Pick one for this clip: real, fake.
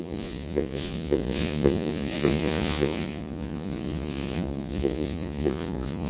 fake